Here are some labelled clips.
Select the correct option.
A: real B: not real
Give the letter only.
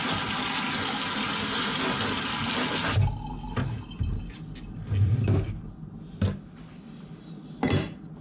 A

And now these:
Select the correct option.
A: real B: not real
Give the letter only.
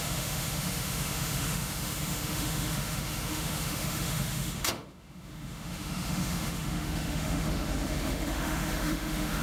B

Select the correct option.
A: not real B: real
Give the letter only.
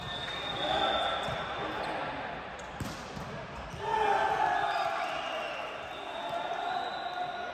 B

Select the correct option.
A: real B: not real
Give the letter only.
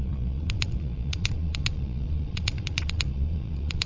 B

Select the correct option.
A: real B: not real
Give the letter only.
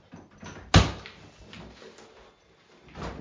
A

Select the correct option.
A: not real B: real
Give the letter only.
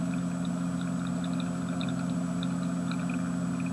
B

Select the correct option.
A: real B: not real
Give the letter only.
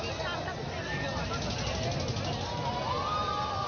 A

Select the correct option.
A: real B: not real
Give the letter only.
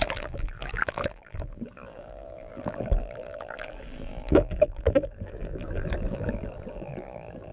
B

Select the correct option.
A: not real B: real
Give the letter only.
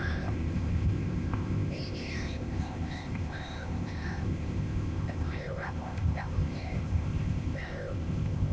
A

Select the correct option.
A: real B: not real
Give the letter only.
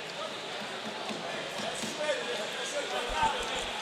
A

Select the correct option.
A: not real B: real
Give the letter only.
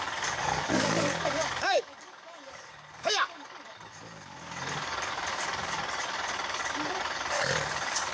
A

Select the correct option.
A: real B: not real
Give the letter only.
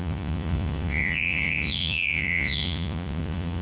B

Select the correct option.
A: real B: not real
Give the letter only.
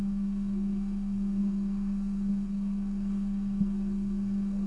B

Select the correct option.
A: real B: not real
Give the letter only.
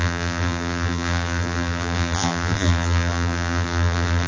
B